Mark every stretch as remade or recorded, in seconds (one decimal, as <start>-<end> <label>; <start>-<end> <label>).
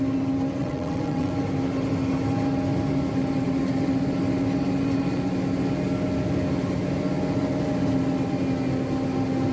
0.0-0.6 recorded; 0.6-1.3 remade; 1.3-9.5 recorded